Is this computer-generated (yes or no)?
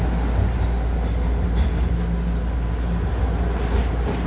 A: no